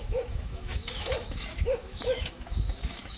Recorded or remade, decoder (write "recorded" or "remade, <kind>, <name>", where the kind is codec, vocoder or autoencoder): remade, autoencoder, DAC-VAE